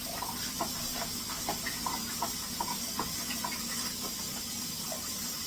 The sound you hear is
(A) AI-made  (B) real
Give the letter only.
B